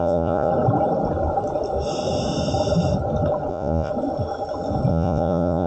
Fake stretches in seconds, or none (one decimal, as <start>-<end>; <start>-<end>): 0.0-0.5; 3.5-3.9; 4.9-5.7